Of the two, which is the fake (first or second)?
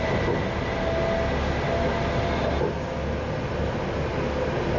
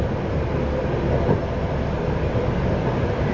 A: second